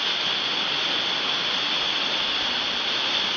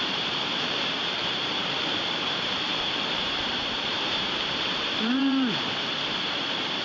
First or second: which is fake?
second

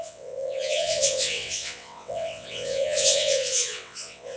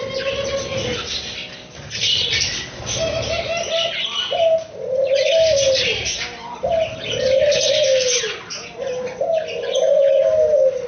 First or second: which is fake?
first